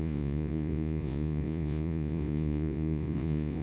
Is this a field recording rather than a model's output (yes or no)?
no